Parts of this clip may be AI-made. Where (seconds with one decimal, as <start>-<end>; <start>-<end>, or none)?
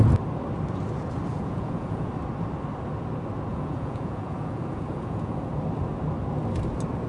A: 1.3-2.1; 3.5-5.5